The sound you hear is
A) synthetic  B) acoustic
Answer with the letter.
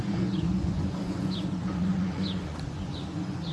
A